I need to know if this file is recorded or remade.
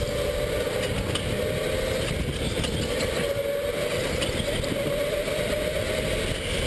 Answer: recorded